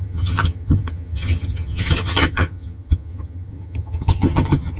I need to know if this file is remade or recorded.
remade